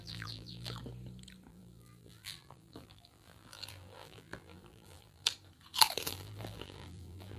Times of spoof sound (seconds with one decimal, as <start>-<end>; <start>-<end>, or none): 0.0-0.8; 1.5-5.3; 6.1-7.4